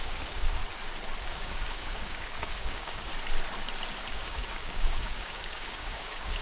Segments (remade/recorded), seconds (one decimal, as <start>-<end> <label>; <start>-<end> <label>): 0.0-0.6 remade; 0.6-1.2 recorded; 1.2-3.1 remade; 3.1-4.1 recorded; 4.1-6.4 remade